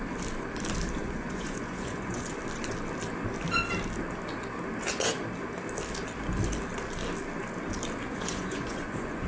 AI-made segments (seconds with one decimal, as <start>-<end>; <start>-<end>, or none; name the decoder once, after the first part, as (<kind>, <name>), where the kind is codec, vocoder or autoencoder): 1.0-2.3 (vocoder, Vocos); 8.1-9.3